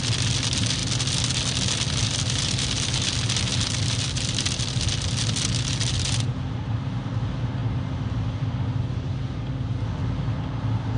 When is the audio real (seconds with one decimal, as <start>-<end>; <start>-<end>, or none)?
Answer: 0.0-0.8; 3.1-3.5; 5.1-6.3; 7.1-11.0